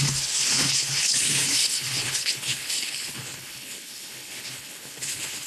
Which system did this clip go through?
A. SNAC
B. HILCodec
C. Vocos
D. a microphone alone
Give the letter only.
B